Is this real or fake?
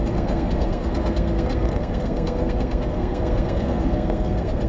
fake